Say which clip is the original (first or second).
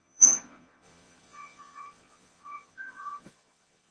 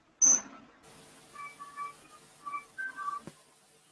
second